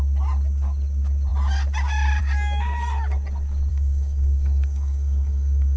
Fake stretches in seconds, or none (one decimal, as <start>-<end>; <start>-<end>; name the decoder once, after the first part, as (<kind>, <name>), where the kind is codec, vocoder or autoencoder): 3.7-5.8 (codec, SNAC)